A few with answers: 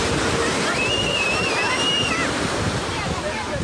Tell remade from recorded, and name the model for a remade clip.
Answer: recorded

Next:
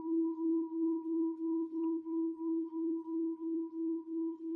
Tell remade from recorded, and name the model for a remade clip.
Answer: remade, codec, HILCodec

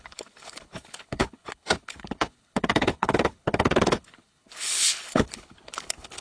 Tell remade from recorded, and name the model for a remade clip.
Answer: remade, codec, HILCodec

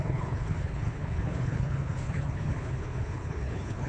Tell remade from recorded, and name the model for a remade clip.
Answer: remade, codec, HILCodec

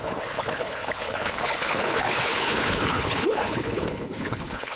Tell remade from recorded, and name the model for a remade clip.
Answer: remade, codec, HILCodec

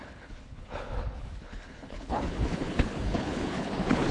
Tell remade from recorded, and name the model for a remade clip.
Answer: remade, codec, HILCodec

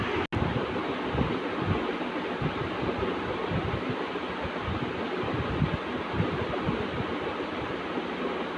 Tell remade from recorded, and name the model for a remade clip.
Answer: recorded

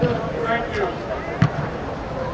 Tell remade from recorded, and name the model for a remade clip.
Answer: recorded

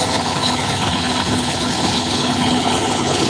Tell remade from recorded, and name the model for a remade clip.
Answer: remade, codec, HILCodec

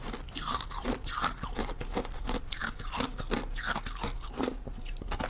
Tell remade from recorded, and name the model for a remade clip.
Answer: recorded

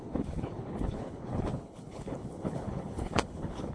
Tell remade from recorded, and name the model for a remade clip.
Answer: remade, codec, HILCodec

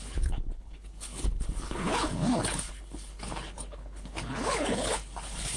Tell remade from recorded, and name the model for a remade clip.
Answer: remade, codec, HILCodec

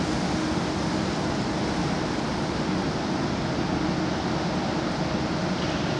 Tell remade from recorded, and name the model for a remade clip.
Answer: recorded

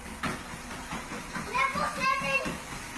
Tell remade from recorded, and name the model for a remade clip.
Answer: recorded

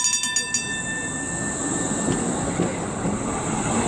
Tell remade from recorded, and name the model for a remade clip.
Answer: recorded